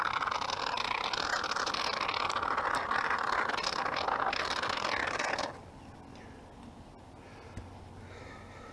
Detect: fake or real real